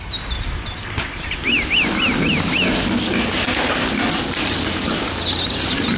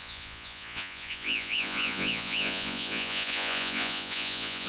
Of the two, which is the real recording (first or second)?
first